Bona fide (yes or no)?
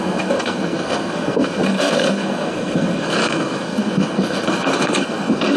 no